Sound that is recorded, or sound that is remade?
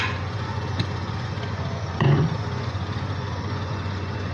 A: remade